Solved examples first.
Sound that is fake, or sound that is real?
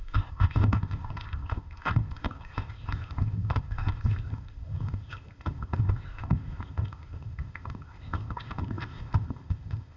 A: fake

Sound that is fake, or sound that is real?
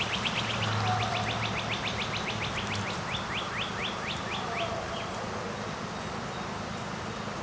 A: real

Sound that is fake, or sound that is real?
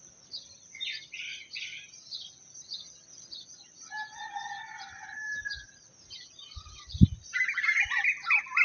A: real